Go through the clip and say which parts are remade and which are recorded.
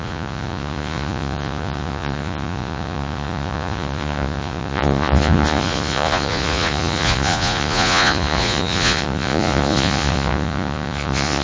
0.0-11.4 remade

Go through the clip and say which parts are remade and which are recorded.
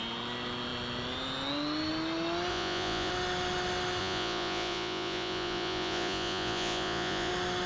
0.0-2.5 recorded; 2.5-3.1 remade; 3.1-4.0 recorded; 4.0-7.3 remade; 7.3-7.7 recorded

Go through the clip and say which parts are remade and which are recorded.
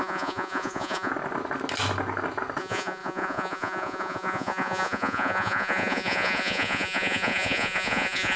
0.0-1.1 remade; 1.1-2.6 recorded; 2.6-8.4 remade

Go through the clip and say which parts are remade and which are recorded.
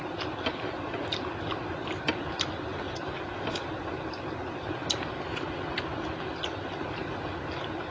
0.0-7.9 recorded